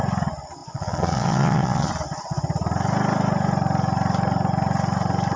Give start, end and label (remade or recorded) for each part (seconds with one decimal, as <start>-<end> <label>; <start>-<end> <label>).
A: 0.0-0.6 recorded; 0.6-1.9 remade; 1.9-5.4 recorded